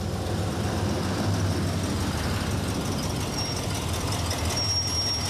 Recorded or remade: recorded